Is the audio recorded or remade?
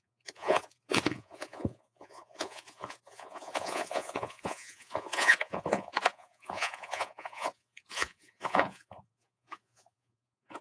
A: remade